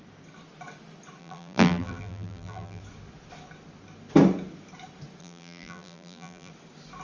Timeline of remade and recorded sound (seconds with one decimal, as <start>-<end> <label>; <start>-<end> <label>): 0.0-1.2 recorded; 1.2-2.8 remade; 2.8-5.2 recorded; 5.2-6.5 remade; 6.5-7.0 recorded